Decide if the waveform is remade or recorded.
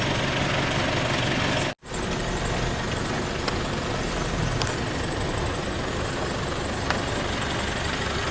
recorded